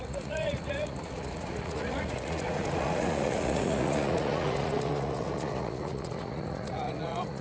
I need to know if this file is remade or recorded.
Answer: remade